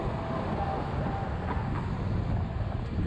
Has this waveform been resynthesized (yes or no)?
no